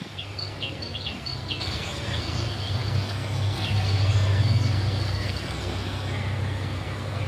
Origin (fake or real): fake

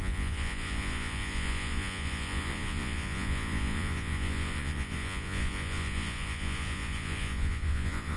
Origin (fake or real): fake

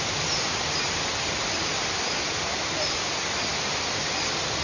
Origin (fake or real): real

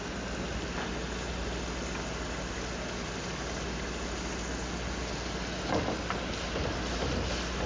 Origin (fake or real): real